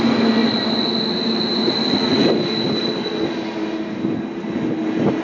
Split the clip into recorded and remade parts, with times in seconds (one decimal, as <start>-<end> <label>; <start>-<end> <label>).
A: 0.0-5.2 recorded

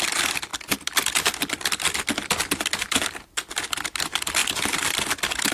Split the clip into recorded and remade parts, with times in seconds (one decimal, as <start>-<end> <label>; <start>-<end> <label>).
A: 0.0-4.4 recorded; 4.4-5.5 remade

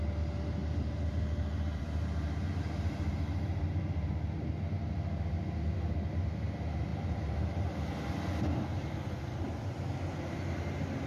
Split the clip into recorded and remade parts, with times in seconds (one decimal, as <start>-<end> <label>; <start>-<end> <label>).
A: 0.0-0.6 recorded; 0.6-4.1 remade; 4.1-6.9 recorded; 6.9-7.9 remade; 7.9-11.1 recorded

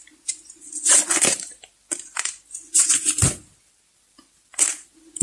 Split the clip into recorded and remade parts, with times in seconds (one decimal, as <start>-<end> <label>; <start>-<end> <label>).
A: 0.0-5.2 recorded

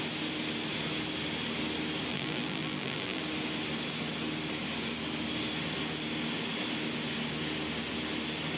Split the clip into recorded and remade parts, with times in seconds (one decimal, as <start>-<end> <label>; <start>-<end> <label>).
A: 0.0-2.1 recorded; 2.1-3.2 remade; 3.2-8.6 recorded

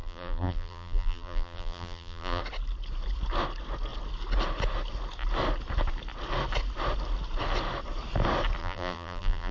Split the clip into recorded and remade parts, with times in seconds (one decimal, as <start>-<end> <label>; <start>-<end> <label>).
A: 0.0-2.4 remade; 2.4-8.6 recorded; 8.6-9.5 remade

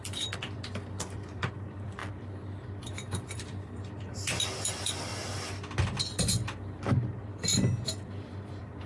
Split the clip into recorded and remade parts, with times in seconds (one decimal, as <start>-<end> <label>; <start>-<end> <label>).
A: 0.0-2.0 remade; 2.0-2.8 recorded; 2.8-5.1 remade; 5.1-7.2 recorded; 7.2-8.9 remade